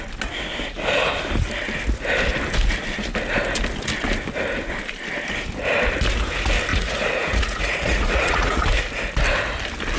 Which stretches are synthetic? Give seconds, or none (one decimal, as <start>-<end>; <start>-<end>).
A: 6.7-8.6